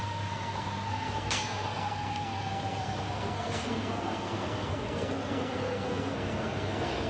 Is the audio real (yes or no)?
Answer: no